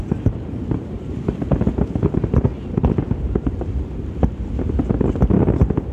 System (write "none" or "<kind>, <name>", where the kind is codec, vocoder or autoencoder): none